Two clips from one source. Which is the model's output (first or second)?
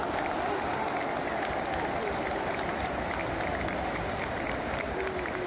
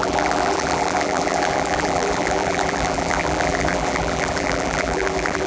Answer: second